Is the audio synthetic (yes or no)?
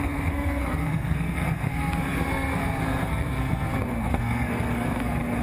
yes